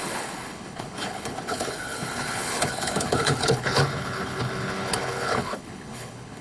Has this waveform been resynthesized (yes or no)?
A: yes